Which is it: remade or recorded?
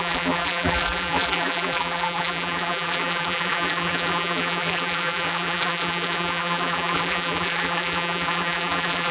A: remade